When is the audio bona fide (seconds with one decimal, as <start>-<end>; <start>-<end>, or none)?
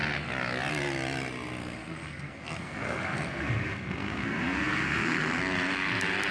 0.0-1.6; 5.4-6.3